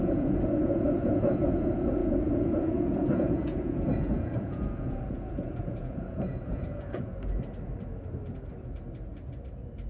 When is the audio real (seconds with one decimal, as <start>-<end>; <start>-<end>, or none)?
7.1-9.9